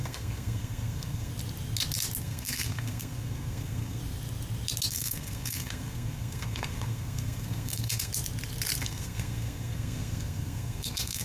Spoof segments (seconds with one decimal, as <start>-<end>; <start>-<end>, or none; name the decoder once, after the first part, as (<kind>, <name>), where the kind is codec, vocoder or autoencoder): 0.0-1.3 (codec, SNAC); 2.2-4.0; 4.9-8.1; 8.8-11.2